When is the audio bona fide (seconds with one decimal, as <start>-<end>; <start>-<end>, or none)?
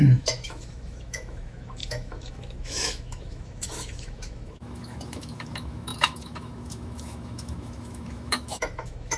none